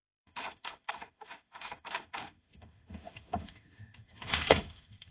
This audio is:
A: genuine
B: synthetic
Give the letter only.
B